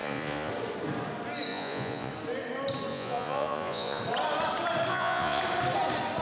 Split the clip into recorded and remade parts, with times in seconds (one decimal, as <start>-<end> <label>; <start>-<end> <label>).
0.0-0.5 remade; 0.5-1.5 recorded; 1.5-2.1 remade; 2.1-2.9 recorded; 2.9-4.0 remade; 4.0-4.9 recorded; 4.9-5.4 remade; 5.4-6.2 recorded

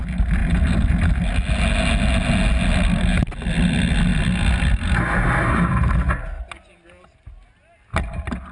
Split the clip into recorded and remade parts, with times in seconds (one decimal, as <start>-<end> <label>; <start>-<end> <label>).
0.0-8.5 recorded

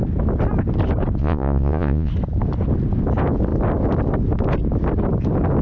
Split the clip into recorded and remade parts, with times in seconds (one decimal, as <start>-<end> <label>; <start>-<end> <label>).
0.0-1.2 recorded; 1.2-2.1 remade; 2.1-5.6 recorded

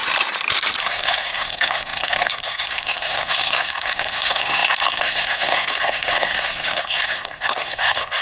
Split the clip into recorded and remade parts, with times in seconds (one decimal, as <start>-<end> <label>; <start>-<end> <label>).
0.0-0.8 recorded; 0.8-8.2 remade

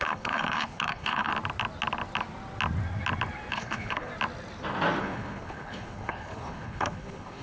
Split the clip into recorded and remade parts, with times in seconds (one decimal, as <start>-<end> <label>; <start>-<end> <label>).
0.0-1.3 remade; 1.3-3.5 recorded; 3.5-4.1 remade; 4.1-5.0 recorded; 5.0-7.4 remade